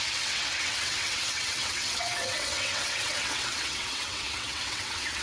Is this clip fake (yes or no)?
yes